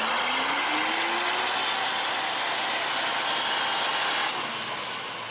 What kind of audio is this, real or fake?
real